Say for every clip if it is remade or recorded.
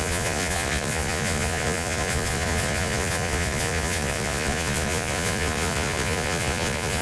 remade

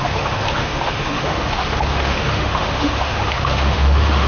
remade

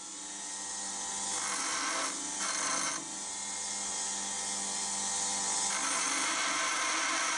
recorded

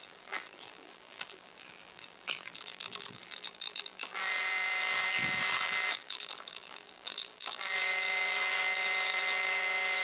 remade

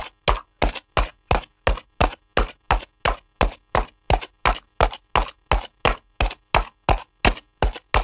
recorded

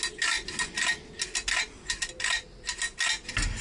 recorded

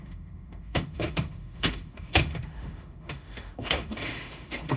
remade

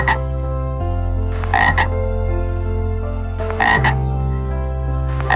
remade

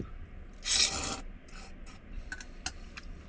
recorded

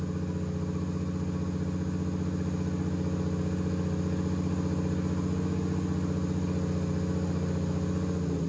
recorded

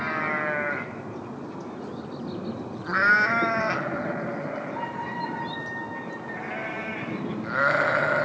recorded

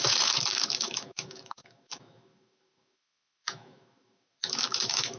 remade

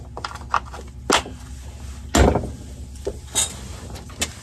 recorded